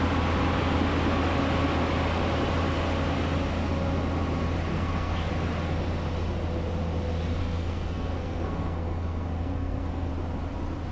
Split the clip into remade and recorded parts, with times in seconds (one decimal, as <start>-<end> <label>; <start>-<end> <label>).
0.0-4.7 recorded; 4.7-5.3 remade; 5.3-7.4 recorded; 7.4-10.1 remade; 10.1-10.9 recorded